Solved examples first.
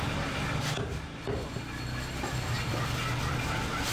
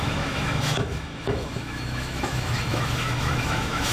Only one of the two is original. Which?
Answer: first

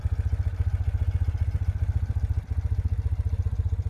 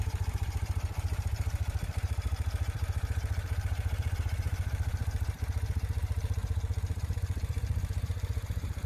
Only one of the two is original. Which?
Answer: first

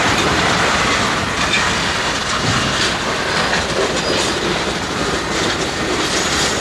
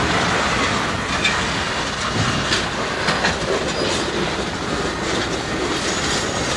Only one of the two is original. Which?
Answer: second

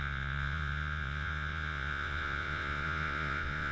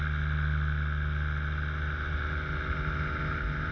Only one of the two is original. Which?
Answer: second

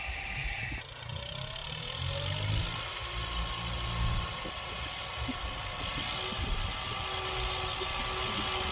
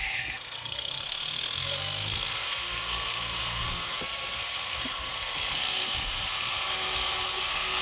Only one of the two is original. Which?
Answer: first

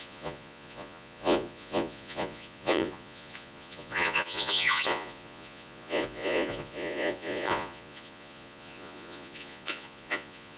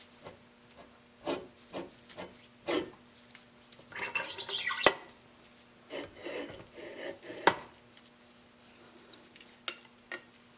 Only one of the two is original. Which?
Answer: second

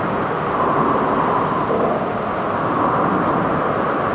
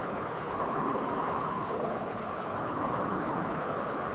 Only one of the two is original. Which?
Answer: first